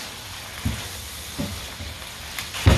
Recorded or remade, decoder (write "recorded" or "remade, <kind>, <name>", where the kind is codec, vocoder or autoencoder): recorded